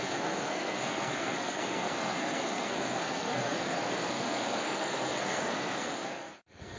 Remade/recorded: remade